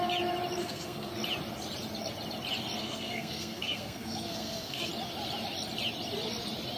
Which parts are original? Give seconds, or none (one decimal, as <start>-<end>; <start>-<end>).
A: 0.0-0.6; 1.1-2.8; 4.9-6.8